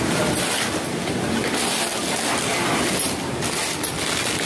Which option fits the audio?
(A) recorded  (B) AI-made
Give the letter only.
A